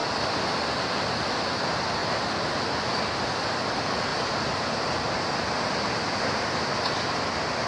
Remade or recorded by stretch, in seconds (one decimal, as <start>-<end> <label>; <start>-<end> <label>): 0.0-0.6 remade; 0.6-4.1 recorded; 4.1-6.6 remade; 6.6-7.7 recorded